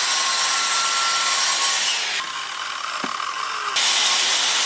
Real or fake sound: real